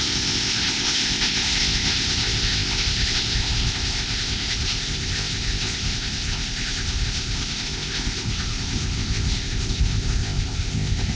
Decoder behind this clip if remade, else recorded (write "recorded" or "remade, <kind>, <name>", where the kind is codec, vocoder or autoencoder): remade, codec, ZipCodec